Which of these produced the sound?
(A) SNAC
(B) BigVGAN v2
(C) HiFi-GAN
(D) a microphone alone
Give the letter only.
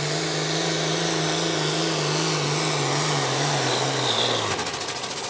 D